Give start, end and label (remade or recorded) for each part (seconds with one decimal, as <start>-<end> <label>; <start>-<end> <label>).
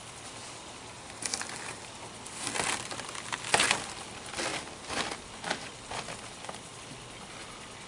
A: 0.0-7.9 recorded